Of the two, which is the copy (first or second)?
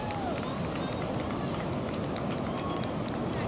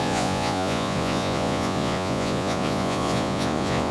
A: second